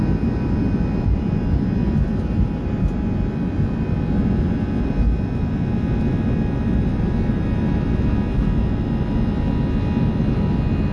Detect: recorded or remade recorded